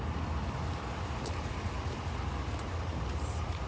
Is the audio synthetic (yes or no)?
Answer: no